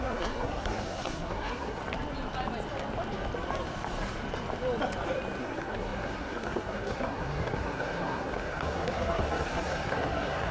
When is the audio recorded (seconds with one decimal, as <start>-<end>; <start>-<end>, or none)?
1.8-5.4